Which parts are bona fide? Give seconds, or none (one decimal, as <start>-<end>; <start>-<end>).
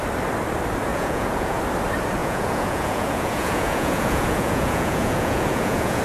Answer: 0.0-0.9; 1.6-2.2